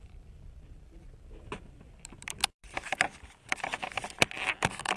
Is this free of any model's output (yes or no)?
no